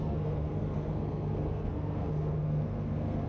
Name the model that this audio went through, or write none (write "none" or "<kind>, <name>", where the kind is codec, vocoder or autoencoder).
codec, SNAC